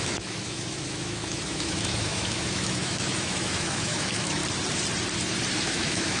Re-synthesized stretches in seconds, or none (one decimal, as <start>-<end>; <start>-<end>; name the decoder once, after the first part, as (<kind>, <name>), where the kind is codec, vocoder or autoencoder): 0.0-4.4 (autoencoder, DAC-VAE); 5.6-6.2